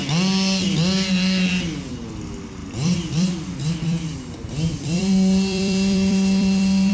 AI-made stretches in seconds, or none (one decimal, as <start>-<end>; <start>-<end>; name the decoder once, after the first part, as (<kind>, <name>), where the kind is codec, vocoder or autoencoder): 2.6-6.9 (vocoder, BigVGAN v2)